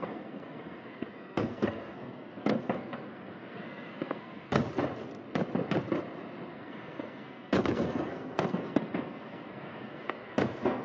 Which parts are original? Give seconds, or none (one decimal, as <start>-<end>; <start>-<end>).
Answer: 4.6-6.5